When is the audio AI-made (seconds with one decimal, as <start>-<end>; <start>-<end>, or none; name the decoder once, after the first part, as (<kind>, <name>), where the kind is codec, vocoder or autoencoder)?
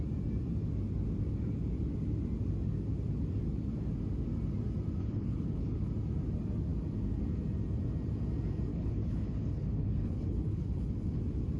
5.0-5.9 (codec, HILCodec); 8.7-11.2